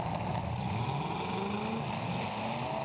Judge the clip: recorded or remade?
recorded